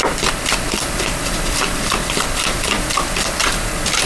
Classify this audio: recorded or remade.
recorded